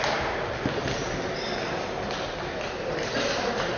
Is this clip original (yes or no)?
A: yes